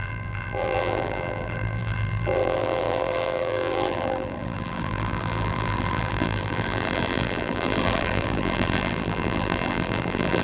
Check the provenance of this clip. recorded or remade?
remade